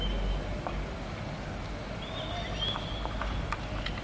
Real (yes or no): yes